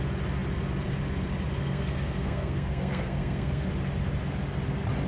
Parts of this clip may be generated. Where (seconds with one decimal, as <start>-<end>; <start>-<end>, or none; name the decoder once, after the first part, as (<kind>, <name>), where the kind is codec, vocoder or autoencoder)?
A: 1.6-3.7 (codec, SNAC)